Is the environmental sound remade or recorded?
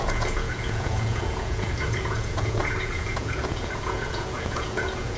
remade